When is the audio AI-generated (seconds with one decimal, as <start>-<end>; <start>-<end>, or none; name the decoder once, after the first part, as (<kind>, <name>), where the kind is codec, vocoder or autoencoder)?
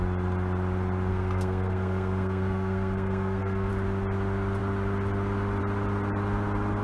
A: 1.1-3.7 (codec, SNAC)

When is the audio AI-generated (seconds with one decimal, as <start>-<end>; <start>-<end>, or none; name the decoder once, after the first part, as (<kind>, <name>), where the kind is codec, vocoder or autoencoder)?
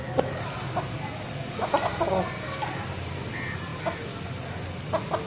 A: none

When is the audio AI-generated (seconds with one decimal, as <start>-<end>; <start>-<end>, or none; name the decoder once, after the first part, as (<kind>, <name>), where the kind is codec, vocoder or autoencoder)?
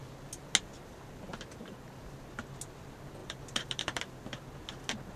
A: 3.2-4.0 (vocoder, BigVGAN v2)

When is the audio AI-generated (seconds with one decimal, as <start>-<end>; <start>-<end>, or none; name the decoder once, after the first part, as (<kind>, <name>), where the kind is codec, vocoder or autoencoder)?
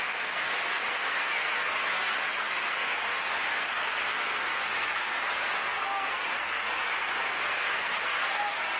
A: 0.0-8.8 (codec, SNAC)